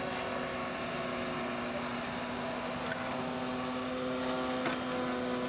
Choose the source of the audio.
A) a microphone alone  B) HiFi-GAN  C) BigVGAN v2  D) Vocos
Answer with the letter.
A